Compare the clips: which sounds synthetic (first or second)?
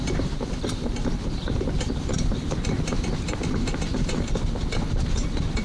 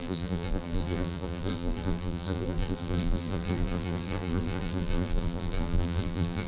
second